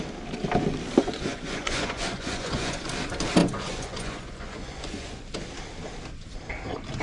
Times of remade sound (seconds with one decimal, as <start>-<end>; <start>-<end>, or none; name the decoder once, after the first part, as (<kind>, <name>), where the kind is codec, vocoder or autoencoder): 1.0-2.8 (vocoder, Vocos); 3.4-5.3